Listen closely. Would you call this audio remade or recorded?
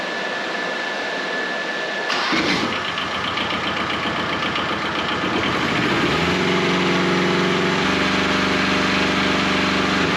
recorded